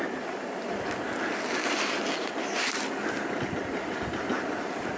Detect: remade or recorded recorded